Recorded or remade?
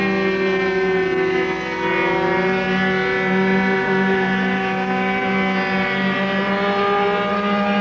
recorded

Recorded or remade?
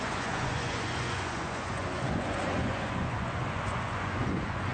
remade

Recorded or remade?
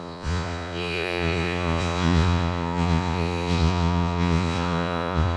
remade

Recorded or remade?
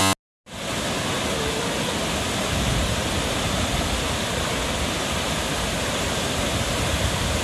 recorded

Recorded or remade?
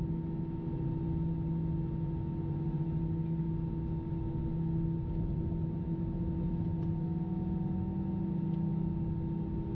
recorded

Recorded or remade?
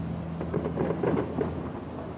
recorded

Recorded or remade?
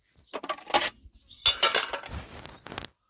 recorded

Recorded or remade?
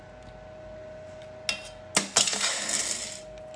recorded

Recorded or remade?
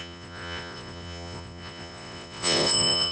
remade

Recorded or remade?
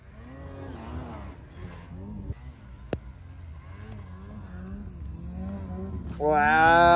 recorded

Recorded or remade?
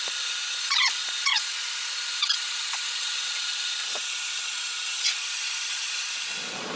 remade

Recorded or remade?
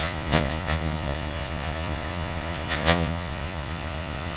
remade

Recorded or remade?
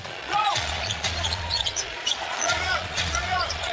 remade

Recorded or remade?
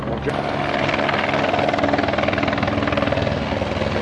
recorded